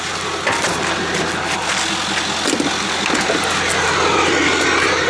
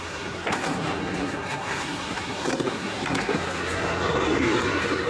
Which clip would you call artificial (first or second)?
second